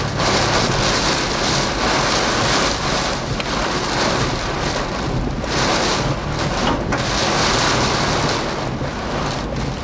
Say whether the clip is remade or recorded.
recorded